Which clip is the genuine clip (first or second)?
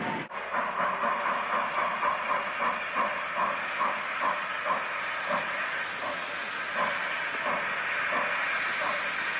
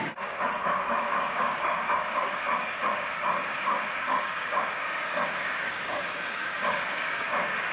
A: first